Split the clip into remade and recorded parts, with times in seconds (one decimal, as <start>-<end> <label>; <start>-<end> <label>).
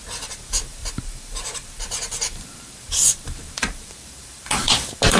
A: 0.0-5.2 remade